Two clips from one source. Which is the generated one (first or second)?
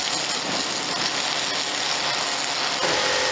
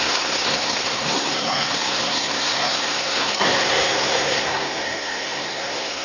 second